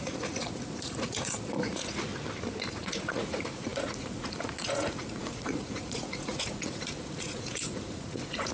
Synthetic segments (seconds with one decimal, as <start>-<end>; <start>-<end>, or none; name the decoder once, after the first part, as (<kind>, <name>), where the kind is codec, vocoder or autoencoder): 0.0-2.1 (vocoder, Vocos); 2.7-8.5

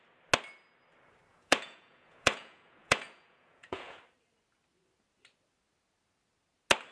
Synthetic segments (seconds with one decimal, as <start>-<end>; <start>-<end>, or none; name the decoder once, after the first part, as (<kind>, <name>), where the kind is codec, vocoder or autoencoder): 1.3-4.0 (vocoder, Vocos)